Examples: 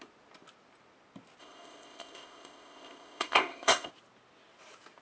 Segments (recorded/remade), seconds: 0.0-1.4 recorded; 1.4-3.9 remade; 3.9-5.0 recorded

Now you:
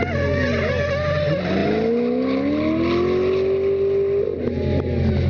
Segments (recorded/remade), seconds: 0.0-5.3 recorded

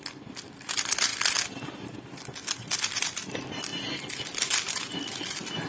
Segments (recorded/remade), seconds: 0.0-5.7 recorded

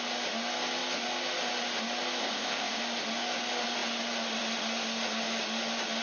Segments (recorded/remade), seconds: 0.0-2.2 recorded; 2.2-2.8 remade; 2.8-6.0 recorded